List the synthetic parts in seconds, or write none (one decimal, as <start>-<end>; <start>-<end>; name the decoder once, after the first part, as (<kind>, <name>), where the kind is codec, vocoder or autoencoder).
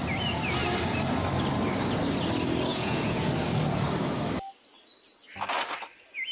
2.7-3.3 (vocoder, Vocos)